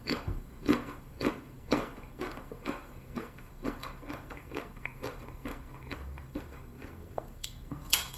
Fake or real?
fake